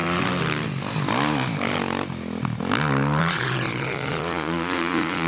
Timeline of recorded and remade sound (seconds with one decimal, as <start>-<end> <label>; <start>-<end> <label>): 0.0-3.2 recorded; 3.2-5.3 remade

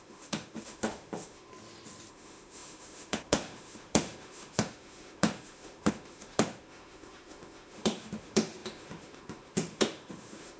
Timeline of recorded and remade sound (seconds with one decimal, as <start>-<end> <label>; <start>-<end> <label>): 0.0-1.5 remade; 1.5-2.1 recorded; 2.1-10.6 remade

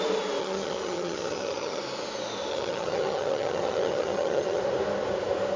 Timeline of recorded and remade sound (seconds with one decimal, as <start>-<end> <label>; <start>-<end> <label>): 0.0-0.4 recorded; 0.4-1.8 remade; 1.8-2.5 recorded; 2.5-4.6 remade; 4.6-5.6 recorded

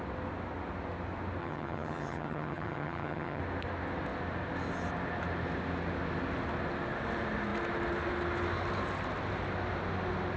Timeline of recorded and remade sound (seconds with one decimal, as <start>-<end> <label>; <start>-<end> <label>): 0.0-1.4 recorded; 1.4-3.4 remade; 3.4-10.4 recorded

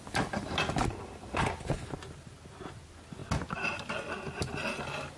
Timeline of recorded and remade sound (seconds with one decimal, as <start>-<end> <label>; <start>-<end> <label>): 0.0-5.2 recorded